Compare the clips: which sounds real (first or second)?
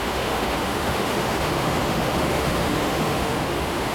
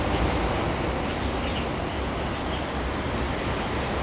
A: second